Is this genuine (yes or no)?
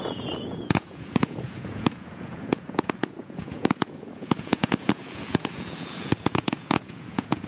no